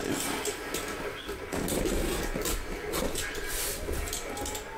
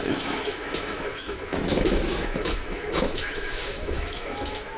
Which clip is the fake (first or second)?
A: second